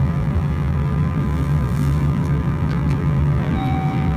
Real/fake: fake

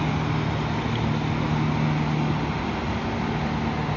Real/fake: real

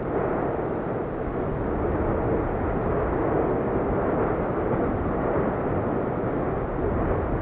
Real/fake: real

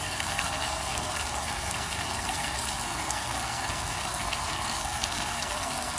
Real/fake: fake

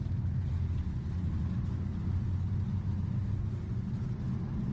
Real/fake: real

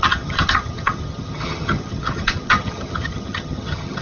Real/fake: fake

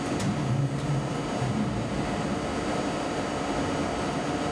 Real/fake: real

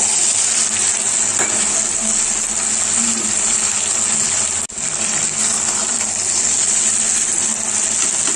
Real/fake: real